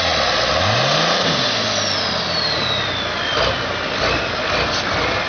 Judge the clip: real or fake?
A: real